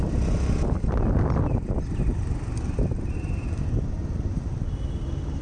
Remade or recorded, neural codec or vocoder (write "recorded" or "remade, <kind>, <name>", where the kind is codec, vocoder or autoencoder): recorded